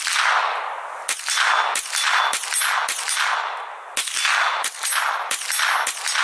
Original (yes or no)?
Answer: yes